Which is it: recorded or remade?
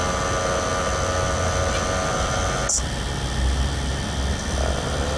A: recorded